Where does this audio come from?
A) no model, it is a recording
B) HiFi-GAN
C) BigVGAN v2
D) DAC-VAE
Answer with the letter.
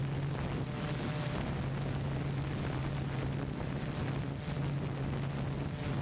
A